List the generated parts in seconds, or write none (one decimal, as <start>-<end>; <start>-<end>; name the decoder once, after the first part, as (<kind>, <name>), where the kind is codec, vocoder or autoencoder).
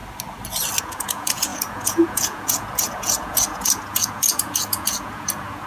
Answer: 0.8-5.7 (vocoder, Vocos)